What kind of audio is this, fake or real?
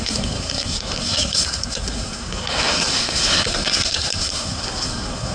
fake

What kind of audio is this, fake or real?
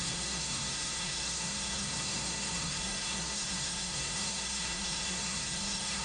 fake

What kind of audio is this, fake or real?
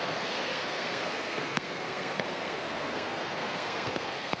fake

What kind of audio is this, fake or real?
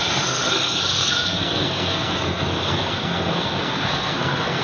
fake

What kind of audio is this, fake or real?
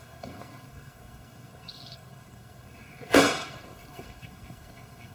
fake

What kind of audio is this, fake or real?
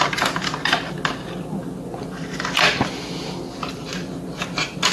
real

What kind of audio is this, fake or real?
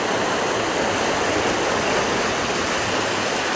real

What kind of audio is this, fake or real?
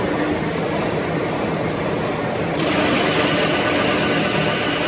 real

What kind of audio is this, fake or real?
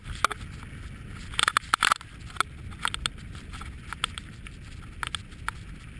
real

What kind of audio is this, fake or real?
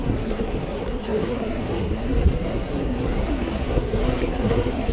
fake